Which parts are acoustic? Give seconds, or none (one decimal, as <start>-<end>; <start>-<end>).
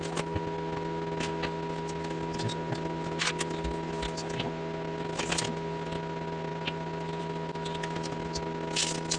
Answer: 0.0-9.2